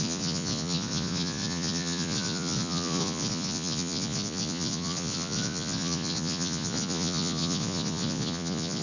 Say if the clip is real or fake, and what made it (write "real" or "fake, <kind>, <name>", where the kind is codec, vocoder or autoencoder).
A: fake, vocoder, Vocos